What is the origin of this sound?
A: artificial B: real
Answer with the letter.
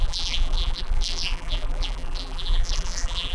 A